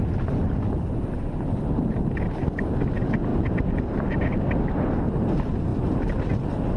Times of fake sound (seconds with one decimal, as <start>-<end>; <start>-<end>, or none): none